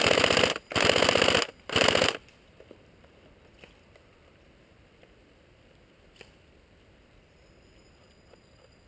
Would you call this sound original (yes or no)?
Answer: no